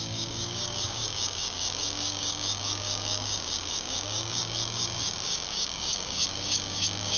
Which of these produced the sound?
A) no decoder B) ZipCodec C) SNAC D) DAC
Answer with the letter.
D